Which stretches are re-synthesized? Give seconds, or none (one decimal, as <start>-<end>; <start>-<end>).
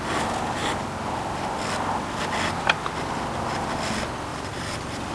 4.3-5.1